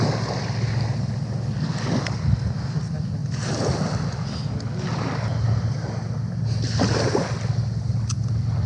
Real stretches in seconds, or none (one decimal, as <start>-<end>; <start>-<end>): 0.0-8.7